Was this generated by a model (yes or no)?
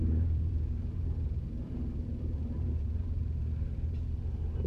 yes